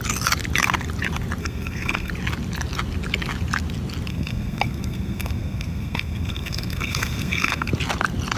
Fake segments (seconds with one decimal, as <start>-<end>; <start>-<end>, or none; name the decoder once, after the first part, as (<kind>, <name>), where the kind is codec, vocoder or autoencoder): 1.4-2.1 (codec, SNAC); 4.1-7.7